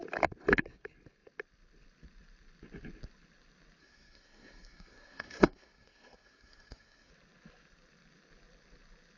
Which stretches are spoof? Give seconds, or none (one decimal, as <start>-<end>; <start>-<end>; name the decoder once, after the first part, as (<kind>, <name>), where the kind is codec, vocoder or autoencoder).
3.8-7.1 (codec, SNAC)